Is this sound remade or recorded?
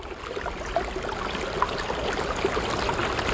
recorded